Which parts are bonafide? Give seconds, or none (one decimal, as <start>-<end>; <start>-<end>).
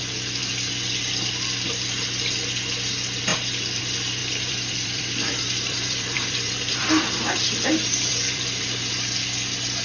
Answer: 0.0-4.2; 8.9-9.8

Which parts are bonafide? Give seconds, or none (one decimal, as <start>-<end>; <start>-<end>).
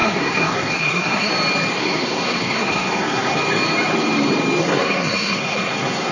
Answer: 1.3-1.8; 3.4-4.6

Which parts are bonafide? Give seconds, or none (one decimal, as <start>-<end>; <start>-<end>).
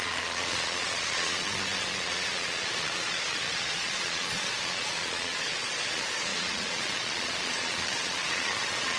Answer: none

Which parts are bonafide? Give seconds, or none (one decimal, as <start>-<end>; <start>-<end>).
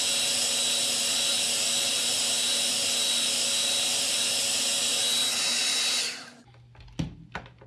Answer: 0.0-7.7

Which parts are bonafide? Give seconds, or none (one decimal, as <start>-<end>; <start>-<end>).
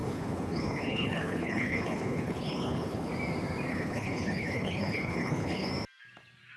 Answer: 3.1-3.7; 5.7-6.6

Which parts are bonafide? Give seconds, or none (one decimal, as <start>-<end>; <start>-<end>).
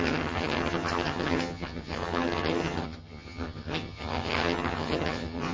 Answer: none